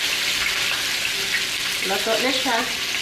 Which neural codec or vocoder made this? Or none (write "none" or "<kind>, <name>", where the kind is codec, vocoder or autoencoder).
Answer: none